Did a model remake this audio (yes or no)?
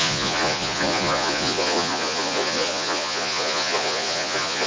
yes